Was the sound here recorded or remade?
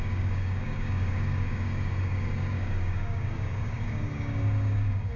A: remade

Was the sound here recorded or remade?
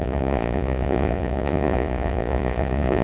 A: remade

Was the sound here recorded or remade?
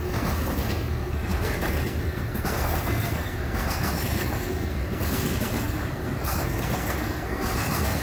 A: remade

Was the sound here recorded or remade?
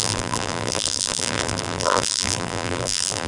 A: remade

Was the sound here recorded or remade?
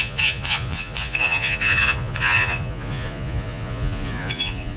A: remade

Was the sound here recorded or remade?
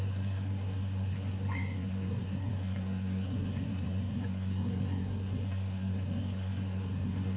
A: remade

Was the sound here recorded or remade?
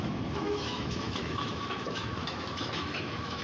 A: remade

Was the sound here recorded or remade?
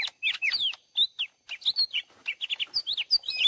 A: recorded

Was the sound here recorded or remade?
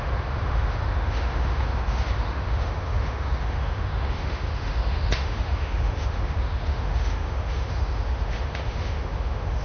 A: remade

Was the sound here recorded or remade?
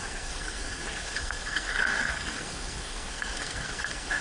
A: remade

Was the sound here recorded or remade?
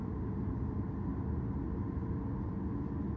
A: recorded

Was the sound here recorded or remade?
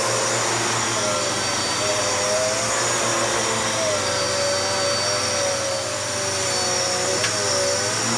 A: recorded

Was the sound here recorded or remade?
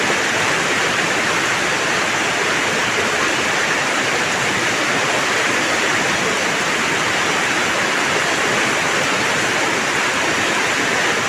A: recorded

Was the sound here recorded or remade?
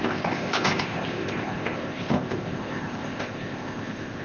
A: remade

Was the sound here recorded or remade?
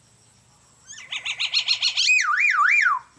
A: recorded